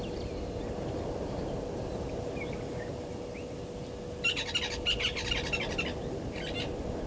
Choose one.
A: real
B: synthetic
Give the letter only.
A